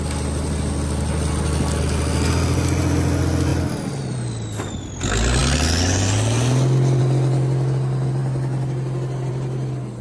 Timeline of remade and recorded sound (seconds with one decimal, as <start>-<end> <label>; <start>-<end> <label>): 0.0-10.0 recorded

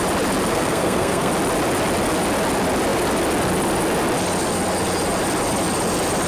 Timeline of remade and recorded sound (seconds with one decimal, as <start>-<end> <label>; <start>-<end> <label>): 0.0-0.5 recorded; 0.5-1.3 remade; 1.3-6.3 recorded

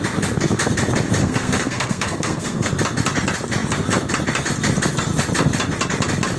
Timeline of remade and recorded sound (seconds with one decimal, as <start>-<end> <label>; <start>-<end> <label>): 0.0-1.2 recorded; 1.2-2.7 remade; 2.7-6.4 recorded

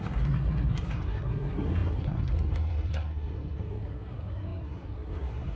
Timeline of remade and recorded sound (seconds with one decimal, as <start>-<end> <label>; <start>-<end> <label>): 0.0-5.6 remade

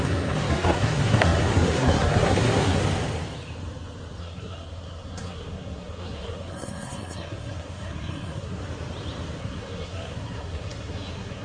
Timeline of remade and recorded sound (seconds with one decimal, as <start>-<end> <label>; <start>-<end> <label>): 0.0-2.8 remade; 2.8-4.2 recorded; 4.2-8.6 remade; 8.6-9.4 recorded; 9.4-11.4 remade

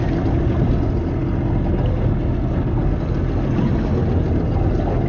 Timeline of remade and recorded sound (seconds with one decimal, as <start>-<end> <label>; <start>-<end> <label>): 0.0-5.1 recorded

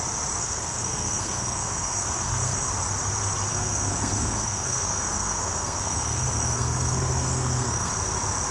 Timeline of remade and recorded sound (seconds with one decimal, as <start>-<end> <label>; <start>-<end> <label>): 0.0-0.4 recorded; 0.4-2.7 remade; 2.7-3.5 recorded; 3.5-7.9 remade; 7.9-8.5 recorded

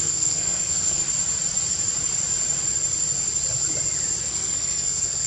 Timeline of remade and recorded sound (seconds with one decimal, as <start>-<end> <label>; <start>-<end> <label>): 0.0-1.0 remade; 1.0-4.2 recorded; 4.2-5.3 remade